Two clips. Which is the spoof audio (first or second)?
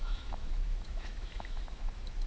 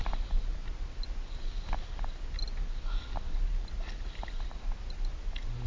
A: first